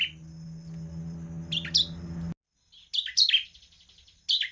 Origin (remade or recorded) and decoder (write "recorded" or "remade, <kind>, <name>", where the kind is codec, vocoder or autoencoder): recorded